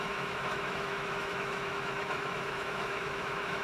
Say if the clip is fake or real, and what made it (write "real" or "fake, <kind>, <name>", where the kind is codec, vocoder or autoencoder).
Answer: fake, autoencoder, DAC-VAE